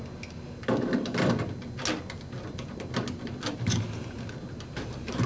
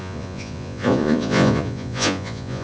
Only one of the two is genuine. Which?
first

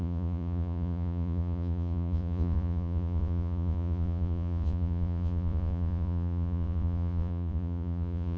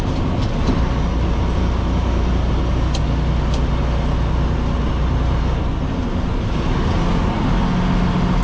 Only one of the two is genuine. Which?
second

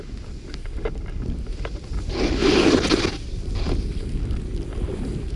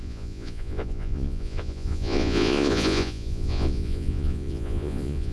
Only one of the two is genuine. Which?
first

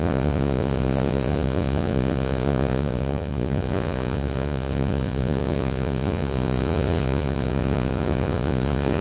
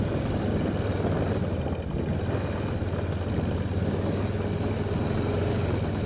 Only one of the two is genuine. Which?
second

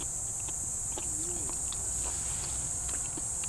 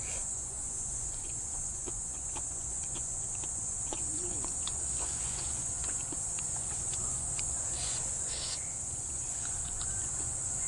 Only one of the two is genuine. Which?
first